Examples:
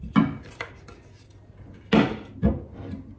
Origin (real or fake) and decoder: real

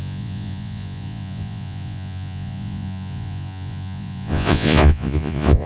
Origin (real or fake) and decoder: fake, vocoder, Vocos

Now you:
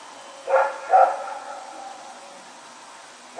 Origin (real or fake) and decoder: fake, vocoder, Vocos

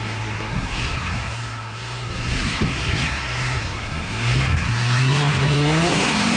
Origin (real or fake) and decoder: fake, codec, SNAC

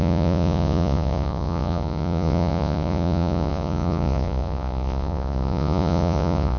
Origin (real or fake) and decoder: fake, vocoder, Vocos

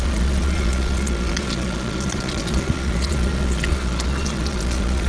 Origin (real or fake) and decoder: fake, vocoder, Vocos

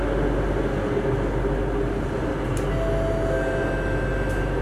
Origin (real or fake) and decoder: real